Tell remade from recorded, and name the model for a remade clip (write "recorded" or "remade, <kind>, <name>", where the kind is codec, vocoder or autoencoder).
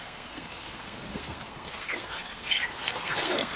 remade, codec, SNAC